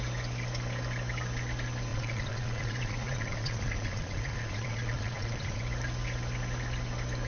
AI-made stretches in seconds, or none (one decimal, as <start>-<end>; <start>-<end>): 1.9-5.6